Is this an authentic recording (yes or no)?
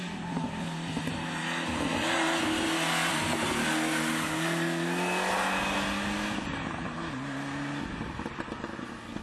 yes